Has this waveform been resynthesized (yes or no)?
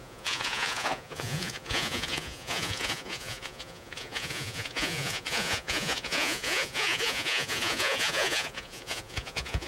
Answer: yes